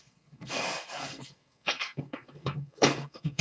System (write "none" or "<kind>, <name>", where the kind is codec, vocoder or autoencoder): codec, SNAC